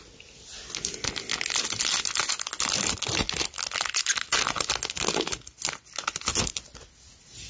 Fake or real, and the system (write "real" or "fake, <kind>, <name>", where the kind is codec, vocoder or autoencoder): real